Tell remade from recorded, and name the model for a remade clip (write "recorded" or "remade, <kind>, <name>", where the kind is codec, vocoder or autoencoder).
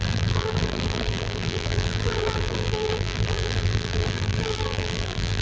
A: remade, vocoder, BigVGAN v2